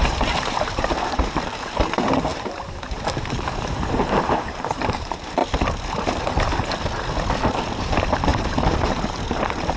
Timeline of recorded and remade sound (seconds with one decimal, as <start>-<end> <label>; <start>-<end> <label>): 0.0-5.4 remade; 5.4-7.8 recorded; 7.8-9.8 remade